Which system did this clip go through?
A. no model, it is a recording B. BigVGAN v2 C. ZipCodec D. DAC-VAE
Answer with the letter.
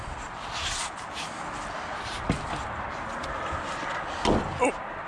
A